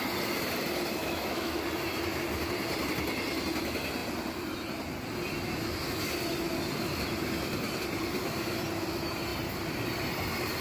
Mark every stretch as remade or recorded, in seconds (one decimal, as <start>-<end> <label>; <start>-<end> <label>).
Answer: 0.0-1.0 recorded; 1.0-1.6 remade; 1.6-10.6 recorded